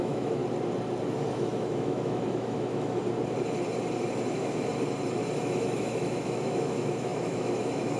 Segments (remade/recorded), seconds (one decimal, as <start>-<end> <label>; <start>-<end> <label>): 0.0-0.4 remade; 0.4-1.3 recorded; 1.3-3.0 remade; 3.0-4.3 recorded; 4.3-4.7 remade; 4.7-5.4 recorded; 5.4-8.0 remade